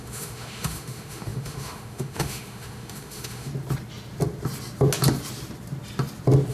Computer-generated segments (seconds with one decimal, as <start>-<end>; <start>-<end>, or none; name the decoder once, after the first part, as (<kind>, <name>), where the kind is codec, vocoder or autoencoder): 0.0-3.5 (autoencoder, DAC-VAE)